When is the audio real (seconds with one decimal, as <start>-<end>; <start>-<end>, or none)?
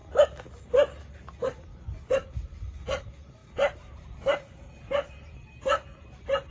0.0-3.4; 5.4-6.5